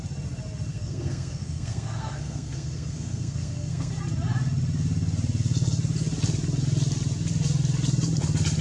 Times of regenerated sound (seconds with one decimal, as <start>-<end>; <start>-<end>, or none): 0.7-3.9